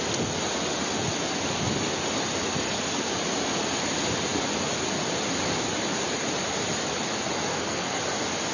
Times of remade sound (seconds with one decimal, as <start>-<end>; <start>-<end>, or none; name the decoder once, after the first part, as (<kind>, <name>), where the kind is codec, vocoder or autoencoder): 7.5-8.0 (codec, SNAC)